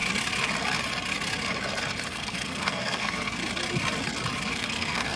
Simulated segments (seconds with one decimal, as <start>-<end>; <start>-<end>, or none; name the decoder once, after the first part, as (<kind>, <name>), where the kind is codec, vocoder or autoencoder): 2.0-3.4 (codec, SNAC); 4.5-5.2